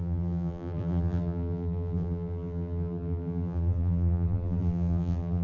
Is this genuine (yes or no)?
no